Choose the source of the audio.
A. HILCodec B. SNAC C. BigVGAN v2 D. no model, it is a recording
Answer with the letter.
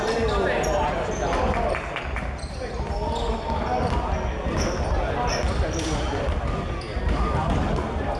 D